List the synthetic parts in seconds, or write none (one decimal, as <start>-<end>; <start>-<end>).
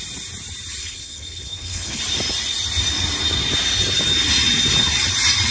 0.8-2.0